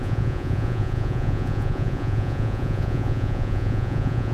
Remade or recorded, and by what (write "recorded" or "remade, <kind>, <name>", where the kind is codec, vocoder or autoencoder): remade, vocoder, Vocos